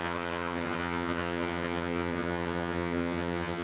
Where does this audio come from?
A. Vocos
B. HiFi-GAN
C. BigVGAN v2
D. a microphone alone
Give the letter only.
B